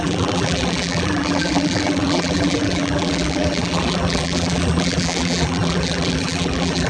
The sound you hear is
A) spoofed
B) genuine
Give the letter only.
A